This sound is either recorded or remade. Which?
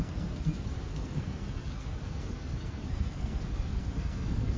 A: remade